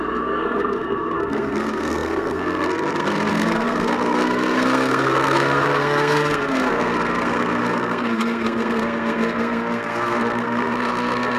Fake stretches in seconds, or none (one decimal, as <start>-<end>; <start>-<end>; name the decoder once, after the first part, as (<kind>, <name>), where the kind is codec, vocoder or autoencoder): 0.0-11.4 (codec, SNAC)